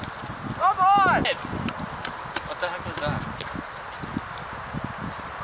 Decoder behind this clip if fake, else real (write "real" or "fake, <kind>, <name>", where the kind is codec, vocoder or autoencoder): real